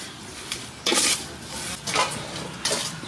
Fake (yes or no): no